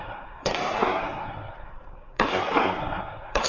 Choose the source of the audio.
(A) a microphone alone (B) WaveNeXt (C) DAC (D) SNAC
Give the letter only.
D